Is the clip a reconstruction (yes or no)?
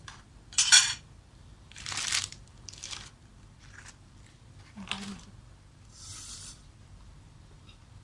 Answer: yes